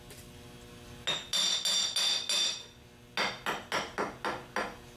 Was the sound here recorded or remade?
recorded